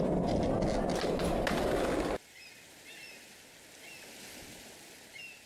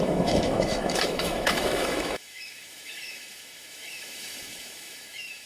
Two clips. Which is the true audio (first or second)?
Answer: first